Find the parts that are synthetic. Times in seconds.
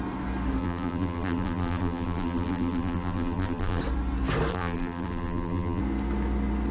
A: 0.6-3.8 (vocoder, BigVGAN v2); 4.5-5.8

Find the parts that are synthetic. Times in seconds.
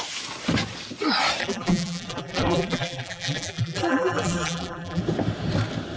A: 1.4-5.0 (vocoder, BigVGAN v2)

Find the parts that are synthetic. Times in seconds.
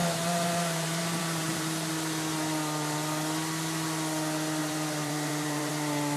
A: 0.0-1.9 (vocoder, BigVGAN v2); 4.6-5.7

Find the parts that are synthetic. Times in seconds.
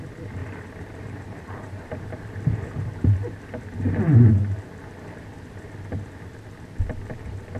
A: 0.4-4.3 (vocoder, BigVGAN v2)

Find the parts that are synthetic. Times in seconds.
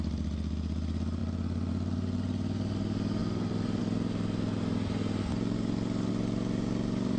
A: 3.2-3.8 (vocoder, BigVGAN v2)